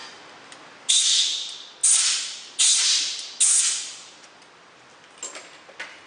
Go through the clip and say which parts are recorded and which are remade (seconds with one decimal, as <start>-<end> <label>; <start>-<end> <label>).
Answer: 0.0-6.1 recorded